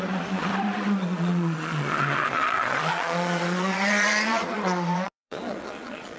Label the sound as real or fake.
fake